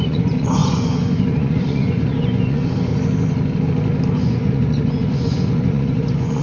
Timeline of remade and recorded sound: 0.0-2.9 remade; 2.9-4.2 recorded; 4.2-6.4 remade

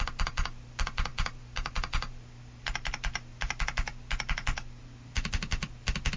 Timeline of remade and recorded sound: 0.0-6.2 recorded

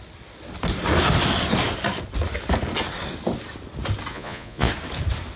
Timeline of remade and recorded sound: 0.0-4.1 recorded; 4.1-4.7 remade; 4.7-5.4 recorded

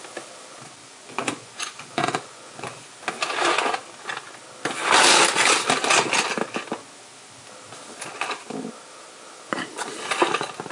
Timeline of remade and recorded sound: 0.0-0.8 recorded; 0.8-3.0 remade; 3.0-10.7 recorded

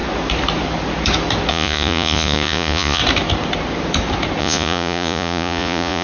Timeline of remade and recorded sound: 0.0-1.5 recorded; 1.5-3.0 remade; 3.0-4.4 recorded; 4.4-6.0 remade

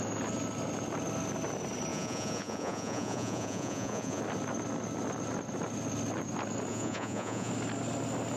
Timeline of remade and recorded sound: 0.0-1.9 recorded; 1.9-4.2 remade; 4.2-6.7 recorded; 6.7-7.5 remade; 7.5-8.4 recorded

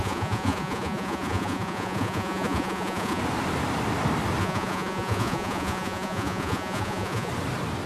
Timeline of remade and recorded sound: 0.0-3.2 remade; 3.2-4.4 recorded; 4.4-7.3 remade; 7.3-7.9 recorded

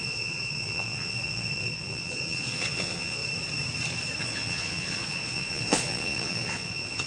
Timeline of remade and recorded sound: 0.0-3.2 remade; 3.2-4.2 recorded; 4.2-7.1 remade